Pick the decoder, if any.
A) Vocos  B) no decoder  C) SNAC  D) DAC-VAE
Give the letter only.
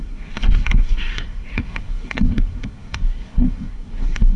C